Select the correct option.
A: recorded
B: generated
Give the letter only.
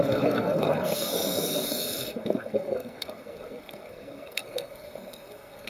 B